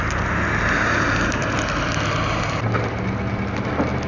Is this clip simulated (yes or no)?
no